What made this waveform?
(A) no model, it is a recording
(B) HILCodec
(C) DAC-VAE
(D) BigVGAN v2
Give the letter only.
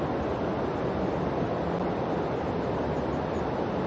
A